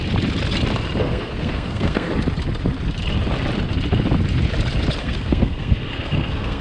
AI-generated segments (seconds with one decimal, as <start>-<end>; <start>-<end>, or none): 1.0-2.1; 5.0-6.6